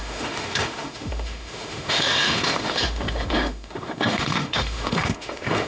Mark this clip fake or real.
fake